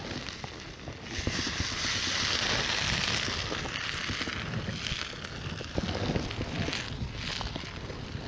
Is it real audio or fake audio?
real